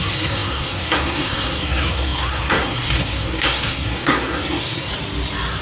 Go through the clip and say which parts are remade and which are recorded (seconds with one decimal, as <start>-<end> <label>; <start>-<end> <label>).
0.0-4.9 remade; 4.9-5.6 recorded

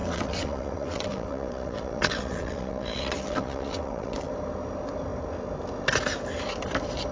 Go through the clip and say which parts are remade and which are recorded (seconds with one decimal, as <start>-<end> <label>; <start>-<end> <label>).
0.0-4.3 remade; 4.3-7.1 recorded